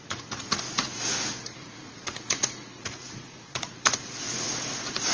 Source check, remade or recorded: remade